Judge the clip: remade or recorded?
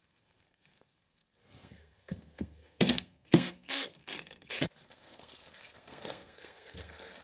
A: remade